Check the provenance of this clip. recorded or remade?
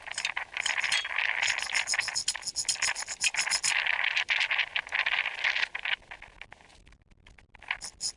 recorded